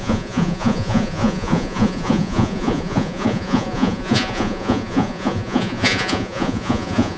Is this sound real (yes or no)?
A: no